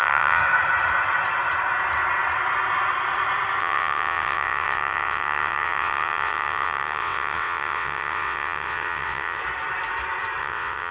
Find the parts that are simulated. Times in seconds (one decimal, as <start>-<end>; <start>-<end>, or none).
0.0-0.4; 3.6-9.4; 10.4-10.9